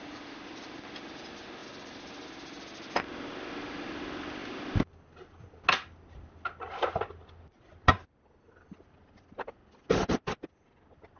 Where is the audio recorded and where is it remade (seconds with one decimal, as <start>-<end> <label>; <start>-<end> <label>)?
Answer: 0.0-11.2 recorded